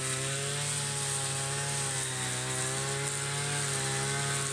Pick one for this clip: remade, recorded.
recorded